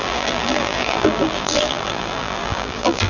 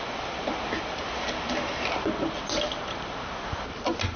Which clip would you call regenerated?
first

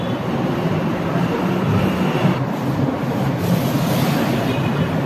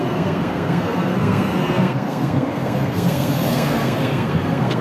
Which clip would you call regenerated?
second